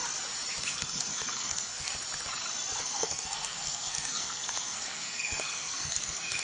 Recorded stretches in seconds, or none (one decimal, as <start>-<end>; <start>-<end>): 0.0-0.6; 1.9-2.8